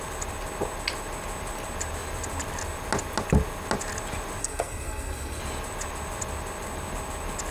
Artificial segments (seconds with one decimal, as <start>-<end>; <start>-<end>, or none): 4.4-5.4